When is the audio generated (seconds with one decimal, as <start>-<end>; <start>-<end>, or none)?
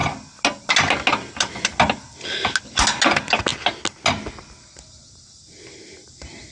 none